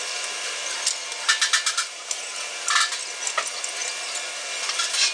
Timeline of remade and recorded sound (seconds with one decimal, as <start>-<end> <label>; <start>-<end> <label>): 0.0-1.8 recorded; 1.8-2.3 remade; 2.3-5.1 recorded